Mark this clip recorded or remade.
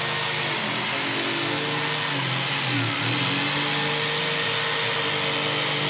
recorded